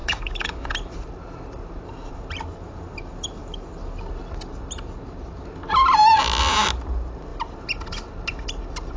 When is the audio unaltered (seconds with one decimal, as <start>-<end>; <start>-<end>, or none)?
0.7-9.0